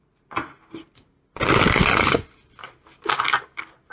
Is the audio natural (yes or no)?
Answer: yes